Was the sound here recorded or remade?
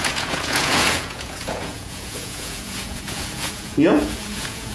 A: remade